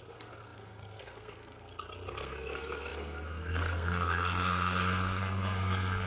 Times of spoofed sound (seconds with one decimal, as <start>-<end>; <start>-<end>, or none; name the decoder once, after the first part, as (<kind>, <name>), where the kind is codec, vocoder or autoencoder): 0.0-1.7 (codec, SNAC); 2.2-6.1

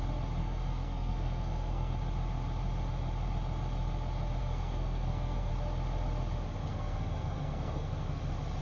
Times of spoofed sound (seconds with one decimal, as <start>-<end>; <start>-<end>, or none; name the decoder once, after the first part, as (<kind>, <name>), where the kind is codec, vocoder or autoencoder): 0.4-1.9 (codec, SNAC); 4.4-5.5; 6.7-8.2